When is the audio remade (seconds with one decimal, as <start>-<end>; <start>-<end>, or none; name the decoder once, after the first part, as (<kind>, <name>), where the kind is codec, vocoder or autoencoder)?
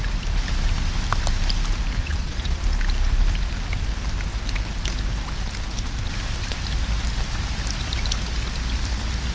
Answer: 2.0-2.6 (vocoder, Vocos)